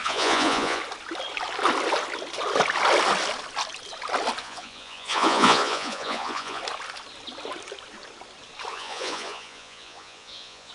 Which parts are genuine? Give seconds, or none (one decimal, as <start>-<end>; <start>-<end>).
0.8-4.4; 6.6-8.7